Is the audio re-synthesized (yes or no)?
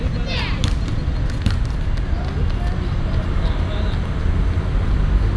no